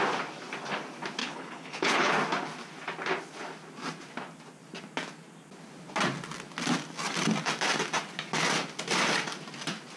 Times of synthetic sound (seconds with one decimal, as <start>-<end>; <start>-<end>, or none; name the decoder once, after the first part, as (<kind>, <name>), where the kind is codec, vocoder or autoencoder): 1.2-2.1 (codec, HILCodec)